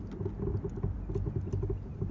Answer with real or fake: real